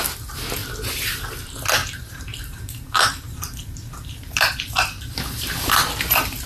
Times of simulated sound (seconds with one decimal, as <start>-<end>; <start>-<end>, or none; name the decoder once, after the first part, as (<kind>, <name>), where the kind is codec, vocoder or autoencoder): 1.8-5.7 (vocoder, BigVGAN v2)